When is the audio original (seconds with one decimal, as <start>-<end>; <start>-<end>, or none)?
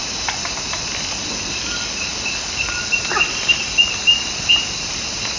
0.0-5.4